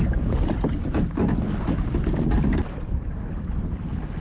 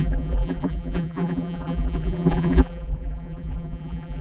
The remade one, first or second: second